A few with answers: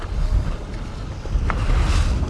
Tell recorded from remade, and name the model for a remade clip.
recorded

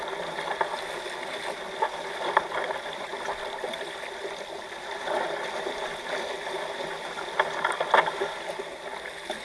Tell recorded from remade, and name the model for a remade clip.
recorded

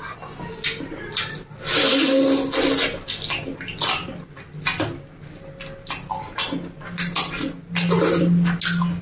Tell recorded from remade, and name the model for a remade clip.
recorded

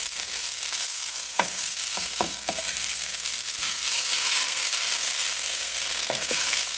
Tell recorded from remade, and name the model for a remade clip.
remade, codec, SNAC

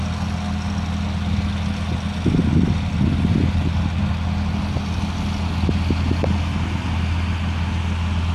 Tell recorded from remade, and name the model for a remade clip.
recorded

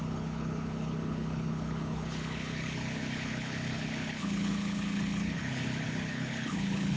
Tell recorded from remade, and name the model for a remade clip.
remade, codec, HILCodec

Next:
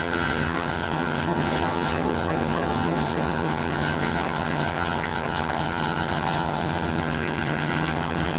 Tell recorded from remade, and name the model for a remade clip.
remade, vocoder, HiFi-GAN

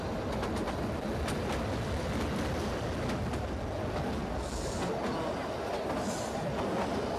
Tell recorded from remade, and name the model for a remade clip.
recorded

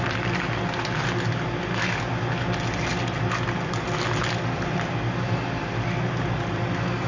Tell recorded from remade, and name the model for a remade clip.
recorded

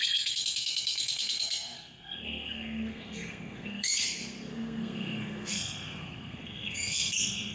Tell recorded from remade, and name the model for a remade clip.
remade, codec, SNAC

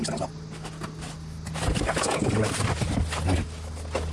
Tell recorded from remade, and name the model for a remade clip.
recorded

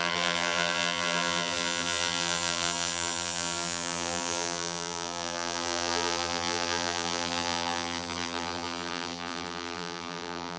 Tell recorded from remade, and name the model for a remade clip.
remade, vocoder, BigVGAN v2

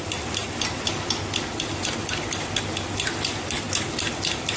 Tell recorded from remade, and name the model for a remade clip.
recorded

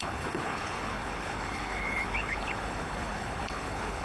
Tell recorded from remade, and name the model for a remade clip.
remade, codec, HILCodec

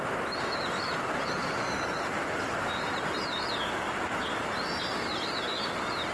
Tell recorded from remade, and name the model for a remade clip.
recorded